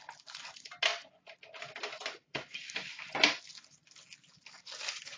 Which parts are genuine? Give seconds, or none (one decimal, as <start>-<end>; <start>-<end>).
0.0-5.2